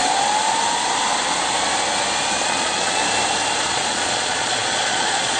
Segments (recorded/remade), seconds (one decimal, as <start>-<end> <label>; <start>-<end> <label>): 0.0-2.4 recorded; 2.4-3.0 remade; 3.0-3.6 recorded; 3.6-5.4 remade